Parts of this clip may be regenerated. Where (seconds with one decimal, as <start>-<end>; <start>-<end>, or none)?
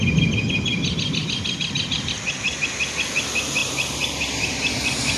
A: 1.2-2.1; 3.6-4.2